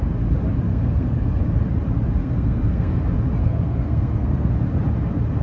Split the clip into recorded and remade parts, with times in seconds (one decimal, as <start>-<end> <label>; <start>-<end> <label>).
0.0-0.7 recorded; 0.7-1.4 remade; 1.4-2.2 recorded; 2.2-3.0 remade; 3.0-3.4 recorded; 3.4-4.5 remade; 4.5-5.4 recorded